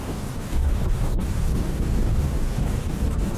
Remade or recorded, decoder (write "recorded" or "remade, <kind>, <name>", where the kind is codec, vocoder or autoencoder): remade, codec, DAC